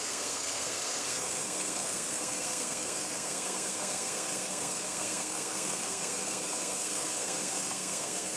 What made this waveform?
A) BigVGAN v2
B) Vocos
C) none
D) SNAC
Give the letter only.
D